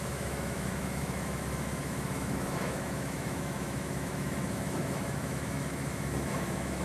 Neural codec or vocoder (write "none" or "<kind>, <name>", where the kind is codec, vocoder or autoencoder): autoencoder, DAC-VAE